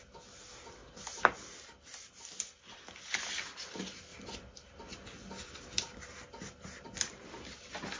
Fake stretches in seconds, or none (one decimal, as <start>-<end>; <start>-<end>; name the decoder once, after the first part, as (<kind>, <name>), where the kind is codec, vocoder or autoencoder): none